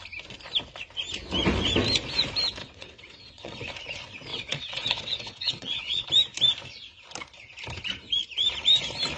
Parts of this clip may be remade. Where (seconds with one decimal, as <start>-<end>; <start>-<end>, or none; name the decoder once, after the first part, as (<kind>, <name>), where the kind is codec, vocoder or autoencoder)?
2.6-3.6 (vocoder, WaveNeXt); 4.3-6.1